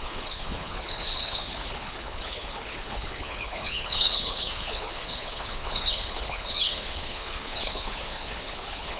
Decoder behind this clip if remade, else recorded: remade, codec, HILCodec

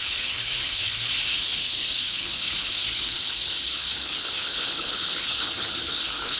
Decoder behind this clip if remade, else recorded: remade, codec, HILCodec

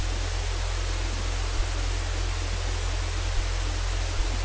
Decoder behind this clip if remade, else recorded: recorded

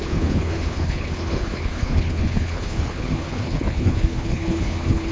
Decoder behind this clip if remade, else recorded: remade, codec, HILCodec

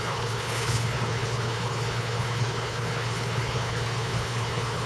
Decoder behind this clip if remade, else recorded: remade, codec, HILCodec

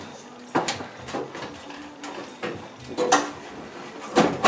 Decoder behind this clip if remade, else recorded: recorded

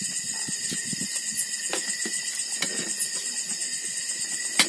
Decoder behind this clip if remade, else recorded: recorded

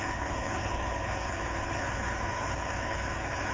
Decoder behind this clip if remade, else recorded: remade, codec, HILCodec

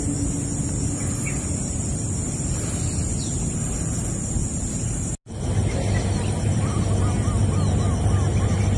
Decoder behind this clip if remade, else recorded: recorded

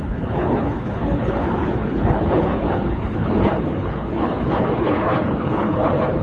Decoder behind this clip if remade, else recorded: remade, codec, HILCodec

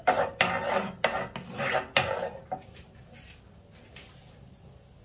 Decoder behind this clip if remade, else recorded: recorded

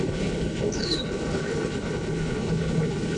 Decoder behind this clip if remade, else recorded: remade, codec, HILCodec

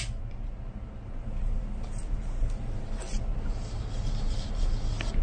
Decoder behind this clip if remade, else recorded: recorded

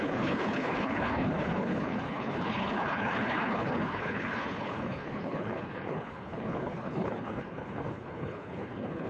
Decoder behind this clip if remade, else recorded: remade, codec, HILCodec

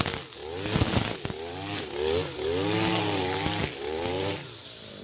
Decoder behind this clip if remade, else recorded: recorded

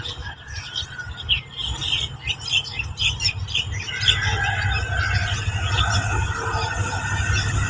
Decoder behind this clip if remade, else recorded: recorded